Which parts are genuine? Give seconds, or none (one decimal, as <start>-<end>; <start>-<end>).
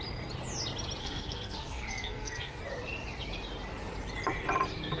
0.0-1.0; 2.6-5.0